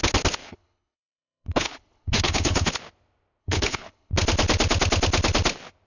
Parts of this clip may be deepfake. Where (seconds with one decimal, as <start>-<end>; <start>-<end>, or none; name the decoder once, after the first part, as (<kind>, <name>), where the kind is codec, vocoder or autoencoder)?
0.4-2.7 (codec, HILCodec); 3.4-4.1